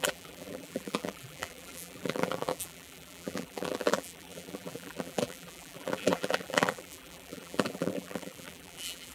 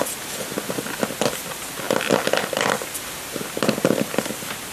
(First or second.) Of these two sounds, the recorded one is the second